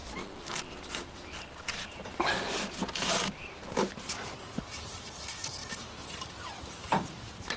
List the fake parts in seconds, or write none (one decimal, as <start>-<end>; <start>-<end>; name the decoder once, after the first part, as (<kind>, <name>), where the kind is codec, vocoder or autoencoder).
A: none